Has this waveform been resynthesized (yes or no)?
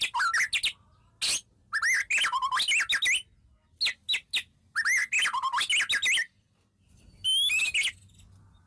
no